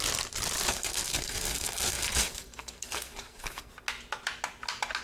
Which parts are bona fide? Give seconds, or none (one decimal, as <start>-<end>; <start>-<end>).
0.0-0.7; 3.7-5.0